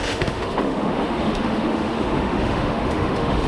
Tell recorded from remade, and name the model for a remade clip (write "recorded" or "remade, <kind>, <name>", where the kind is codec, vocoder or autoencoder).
remade, autoencoder, DAC-VAE